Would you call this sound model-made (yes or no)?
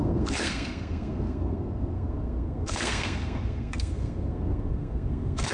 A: yes